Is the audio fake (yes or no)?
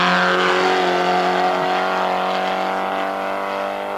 no